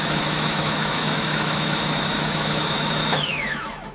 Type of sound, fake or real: fake